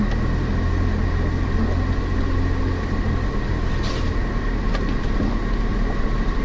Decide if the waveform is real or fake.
real